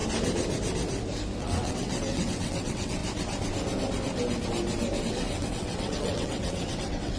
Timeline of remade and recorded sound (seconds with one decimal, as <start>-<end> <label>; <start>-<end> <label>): 0.0-1.4 recorded; 1.4-3.0 remade; 3.0-5.0 recorded; 5.0-7.2 remade